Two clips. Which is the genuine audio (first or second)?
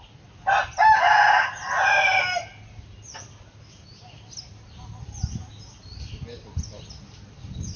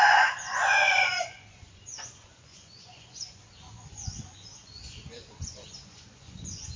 first